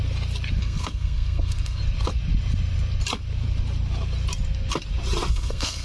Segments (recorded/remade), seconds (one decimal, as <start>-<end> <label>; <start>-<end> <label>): 0.0-0.6 recorded; 0.6-1.8 remade; 1.8-5.3 recorded; 5.3-5.8 remade